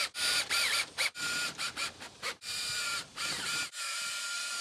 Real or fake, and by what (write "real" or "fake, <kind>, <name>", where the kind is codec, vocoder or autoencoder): fake, vocoder, BigVGAN v2